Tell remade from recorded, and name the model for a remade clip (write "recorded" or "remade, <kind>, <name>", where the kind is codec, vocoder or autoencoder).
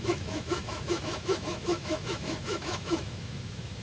remade, autoencoder, DAC-VAE